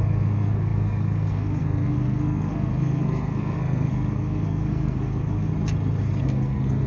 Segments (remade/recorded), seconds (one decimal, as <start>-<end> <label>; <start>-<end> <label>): 0.0-5.5 remade; 5.5-6.2 recorded; 6.2-6.9 remade